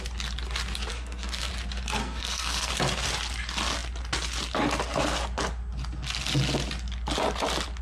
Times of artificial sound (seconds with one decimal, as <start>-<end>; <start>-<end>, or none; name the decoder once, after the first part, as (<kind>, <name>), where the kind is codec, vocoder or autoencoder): 0.9-1.5 (codec, SNAC); 2.0-2.7